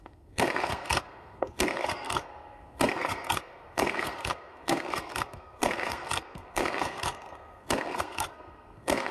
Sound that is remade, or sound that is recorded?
remade